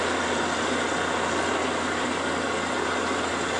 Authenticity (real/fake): real